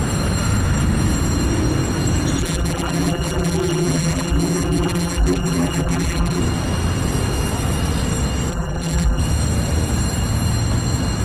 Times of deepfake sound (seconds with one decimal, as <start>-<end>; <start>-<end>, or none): 2.4-6.4; 8.5-9.2

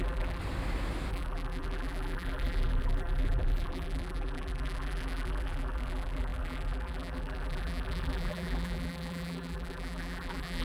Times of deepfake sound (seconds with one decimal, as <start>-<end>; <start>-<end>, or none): 0.0-0.4; 1.1-10.6

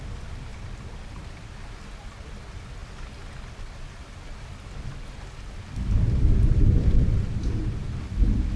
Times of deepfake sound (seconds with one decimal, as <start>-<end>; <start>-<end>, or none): 0.5-1.6; 2.8-7.8

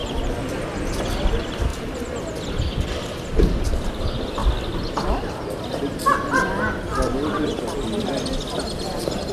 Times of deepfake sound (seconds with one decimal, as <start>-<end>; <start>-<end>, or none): none

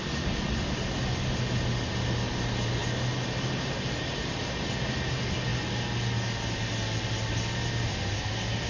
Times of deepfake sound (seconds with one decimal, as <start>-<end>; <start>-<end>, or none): none

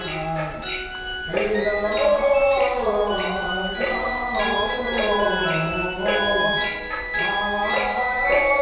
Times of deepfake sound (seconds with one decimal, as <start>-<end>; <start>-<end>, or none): 1.1-5.4